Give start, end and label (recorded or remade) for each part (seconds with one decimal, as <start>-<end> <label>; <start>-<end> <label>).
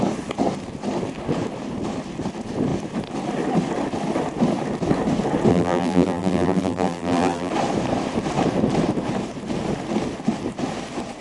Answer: 0.0-5.5 recorded; 5.5-7.5 remade; 7.5-11.2 recorded